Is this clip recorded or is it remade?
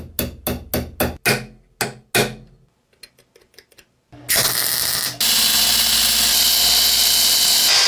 recorded